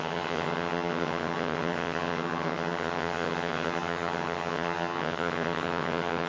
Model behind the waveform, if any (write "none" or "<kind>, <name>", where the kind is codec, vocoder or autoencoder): vocoder, HiFi-GAN